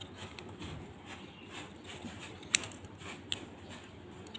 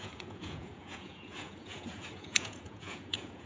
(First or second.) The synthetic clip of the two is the second